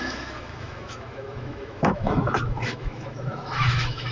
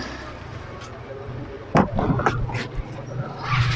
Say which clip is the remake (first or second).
first